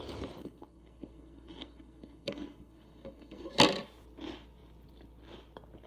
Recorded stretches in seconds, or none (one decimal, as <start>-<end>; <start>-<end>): 0.0-0.4; 3.5-5.9

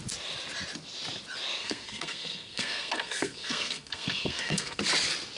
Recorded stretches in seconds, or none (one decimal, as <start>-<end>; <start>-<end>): 0.0-1.6; 4.8-5.4